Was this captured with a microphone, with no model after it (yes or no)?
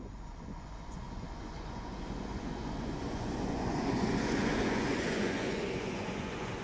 no